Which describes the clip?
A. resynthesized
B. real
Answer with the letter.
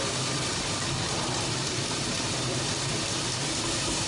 B